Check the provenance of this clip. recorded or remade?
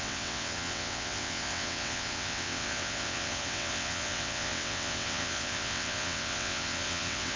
remade